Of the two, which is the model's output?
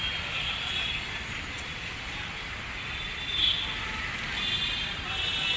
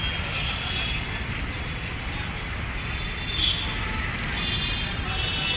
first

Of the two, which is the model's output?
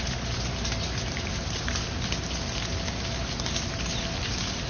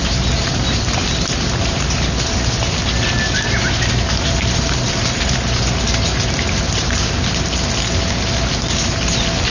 first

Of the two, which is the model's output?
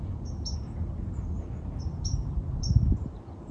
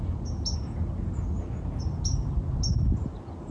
first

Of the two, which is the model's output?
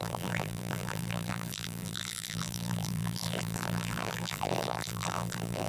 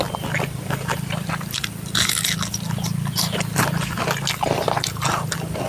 first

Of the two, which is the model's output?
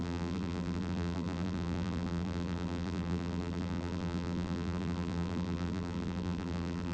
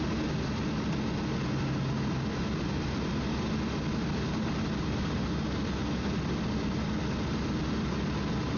first